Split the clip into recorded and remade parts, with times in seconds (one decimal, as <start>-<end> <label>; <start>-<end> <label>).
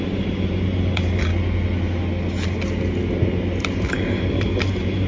0.0-1.3 remade; 1.3-3.9 recorded; 3.9-5.1 remade